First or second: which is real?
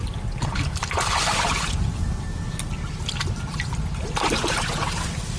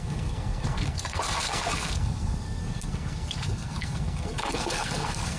first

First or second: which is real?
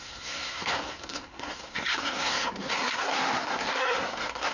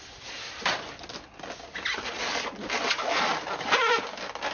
second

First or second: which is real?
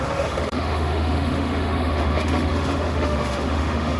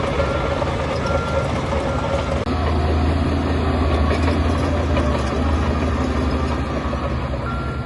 second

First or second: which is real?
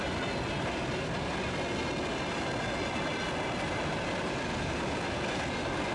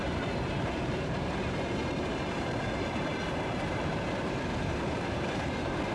first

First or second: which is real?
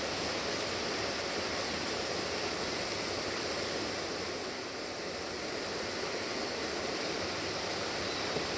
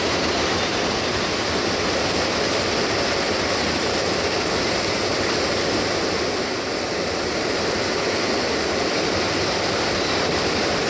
first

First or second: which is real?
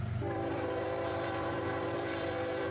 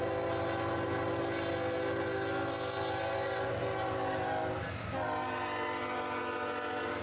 second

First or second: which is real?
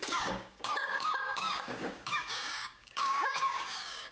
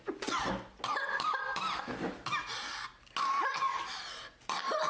second